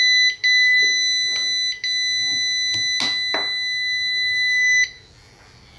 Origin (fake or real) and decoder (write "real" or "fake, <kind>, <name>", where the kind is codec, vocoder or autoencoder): real